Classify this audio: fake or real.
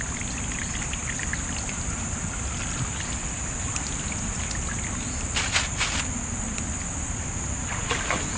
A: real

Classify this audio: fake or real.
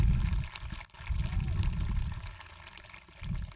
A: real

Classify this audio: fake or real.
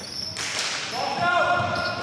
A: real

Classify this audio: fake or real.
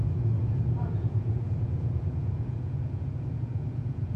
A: fake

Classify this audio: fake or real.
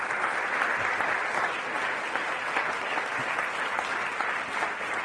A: real